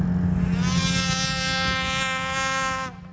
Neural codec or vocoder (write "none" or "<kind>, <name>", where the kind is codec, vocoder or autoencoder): none